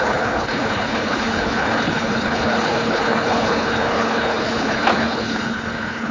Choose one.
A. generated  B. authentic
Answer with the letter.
A